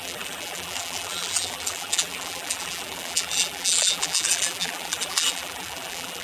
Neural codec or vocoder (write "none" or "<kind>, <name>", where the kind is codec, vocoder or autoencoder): vocoder, BigVGAN v2